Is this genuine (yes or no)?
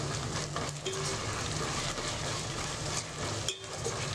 yes